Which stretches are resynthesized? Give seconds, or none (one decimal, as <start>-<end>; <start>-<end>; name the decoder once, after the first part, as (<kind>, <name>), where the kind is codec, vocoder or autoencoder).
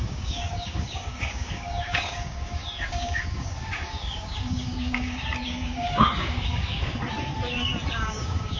0.0-7.0 (codec, DAC); 7.9-8.6